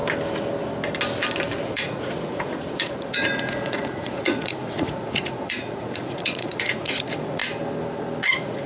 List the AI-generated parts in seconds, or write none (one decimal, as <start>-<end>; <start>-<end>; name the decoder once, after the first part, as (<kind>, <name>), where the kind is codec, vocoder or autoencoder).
1.7-7.4 (vocoder, Vocos); 8.2-8.7